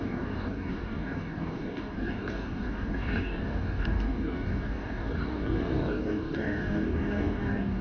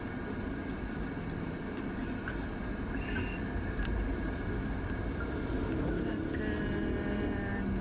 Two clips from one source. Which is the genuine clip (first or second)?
second